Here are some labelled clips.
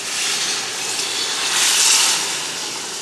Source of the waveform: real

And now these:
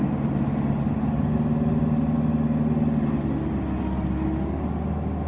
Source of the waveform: real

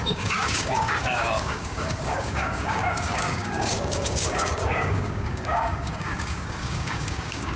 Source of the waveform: fake